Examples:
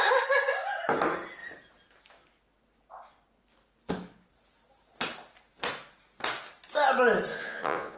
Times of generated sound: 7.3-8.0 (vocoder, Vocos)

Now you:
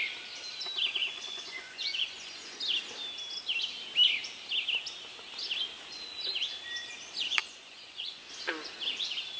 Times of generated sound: 1.0-2.6 (vocoder, Vocos); 7.4-8.3

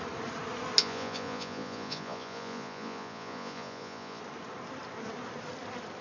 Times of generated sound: 0.8-4.2 (vocoder, Vocos)

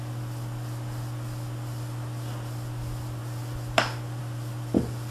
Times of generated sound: none